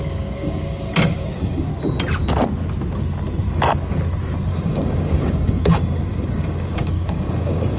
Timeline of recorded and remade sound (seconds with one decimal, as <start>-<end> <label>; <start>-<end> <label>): 0.0-1.7 remade; 1.7-4.5 recorded; 4.5-7.8 remade